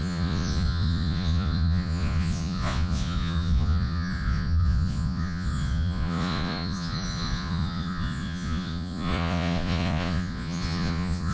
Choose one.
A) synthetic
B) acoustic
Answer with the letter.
A